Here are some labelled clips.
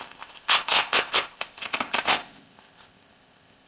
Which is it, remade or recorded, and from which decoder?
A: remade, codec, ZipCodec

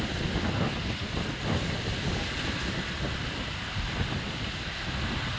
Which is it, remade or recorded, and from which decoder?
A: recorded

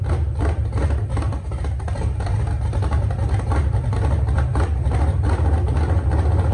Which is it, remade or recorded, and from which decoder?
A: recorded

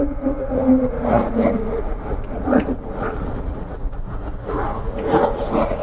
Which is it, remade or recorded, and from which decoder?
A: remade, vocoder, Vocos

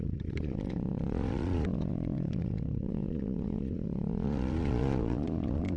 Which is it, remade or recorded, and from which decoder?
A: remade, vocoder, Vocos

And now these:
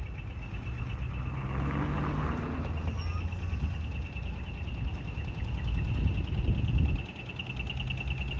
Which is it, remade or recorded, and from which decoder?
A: recorded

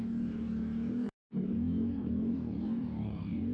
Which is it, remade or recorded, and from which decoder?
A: remade, codec, DAC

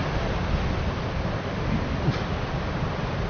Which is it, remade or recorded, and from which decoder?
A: recorded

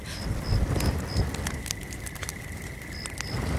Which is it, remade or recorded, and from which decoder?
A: recorded